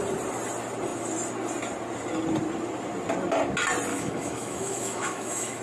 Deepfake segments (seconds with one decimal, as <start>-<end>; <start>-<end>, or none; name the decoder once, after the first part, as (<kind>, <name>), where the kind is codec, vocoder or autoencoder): 3.9-5.6 (autoencoder, DAC-VAE)